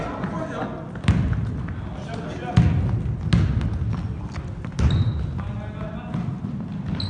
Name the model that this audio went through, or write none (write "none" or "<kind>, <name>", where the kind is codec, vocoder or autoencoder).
none